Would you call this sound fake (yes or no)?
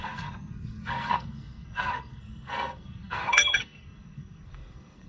yes